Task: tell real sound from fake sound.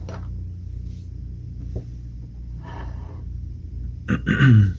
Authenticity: real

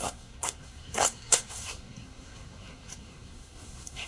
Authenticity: fake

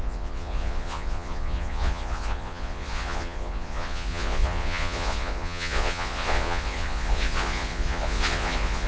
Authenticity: fake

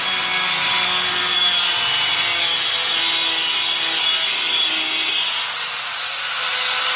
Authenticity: real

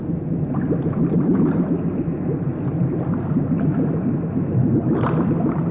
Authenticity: real